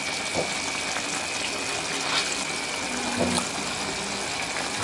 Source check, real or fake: real